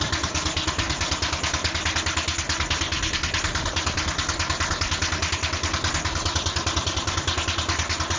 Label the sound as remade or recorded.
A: recorded